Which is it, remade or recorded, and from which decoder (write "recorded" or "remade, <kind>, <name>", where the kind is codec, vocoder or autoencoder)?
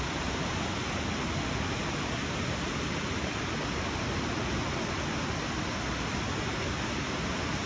recorded